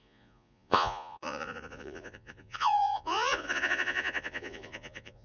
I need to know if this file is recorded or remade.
remade